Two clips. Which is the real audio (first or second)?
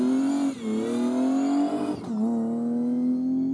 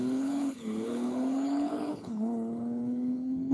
first